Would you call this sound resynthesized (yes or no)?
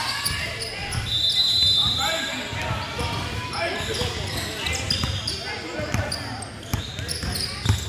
no